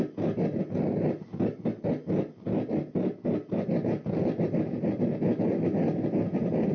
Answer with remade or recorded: recorded